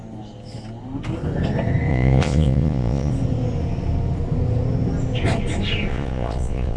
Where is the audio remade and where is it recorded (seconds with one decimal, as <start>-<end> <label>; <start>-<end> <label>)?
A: 0.0-1.9 recorded; 1.9-3.1 remade; 3.1-5.9 recorded; 5.9-6.8 remade